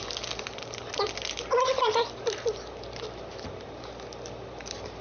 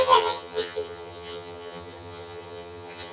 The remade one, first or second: second